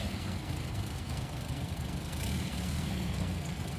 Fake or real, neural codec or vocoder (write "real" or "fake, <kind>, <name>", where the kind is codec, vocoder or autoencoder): fake, codec, SNAC